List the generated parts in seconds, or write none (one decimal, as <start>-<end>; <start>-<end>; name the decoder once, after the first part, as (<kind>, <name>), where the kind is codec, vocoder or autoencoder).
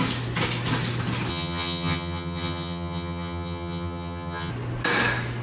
1.3-4.5 (vocoder, HiFi-GAN)